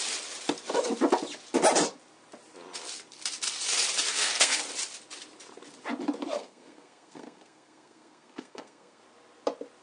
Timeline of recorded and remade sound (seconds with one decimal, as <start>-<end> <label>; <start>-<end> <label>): 0.0-4.1 recorded; 4.1-4.6 remade; 4.6-6.3 recorded; 6.3-9.0 remade; 9.0-9.8 recorded